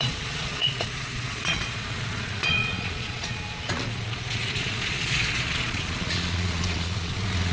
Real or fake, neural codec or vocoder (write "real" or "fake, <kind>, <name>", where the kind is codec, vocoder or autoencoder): fake, vocoder, Vocos